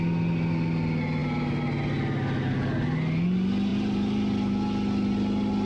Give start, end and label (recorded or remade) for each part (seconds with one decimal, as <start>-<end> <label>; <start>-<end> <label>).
0.0-5.7 recorded